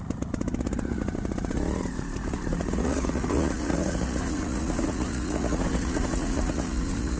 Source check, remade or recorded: remade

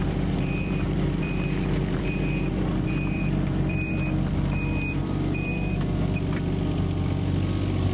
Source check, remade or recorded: remade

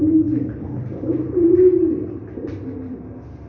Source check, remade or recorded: recorded